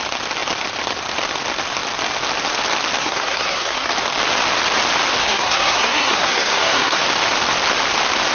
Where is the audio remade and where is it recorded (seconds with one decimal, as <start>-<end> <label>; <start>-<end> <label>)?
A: 0.0-3.0 recorded; 3.0-3.9 remade; 3.9-5.2 recorded; 5.2-7.0 remade; 7.0-8.3 recorded